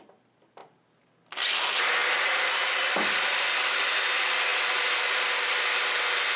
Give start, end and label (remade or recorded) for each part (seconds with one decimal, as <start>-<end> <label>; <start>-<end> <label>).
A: 0.0-6.4 recorded